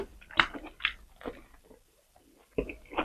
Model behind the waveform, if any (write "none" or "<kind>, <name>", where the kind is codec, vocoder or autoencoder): vocoder, BigVGAN v2